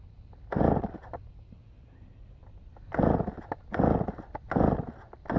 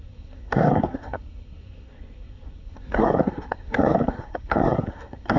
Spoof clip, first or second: second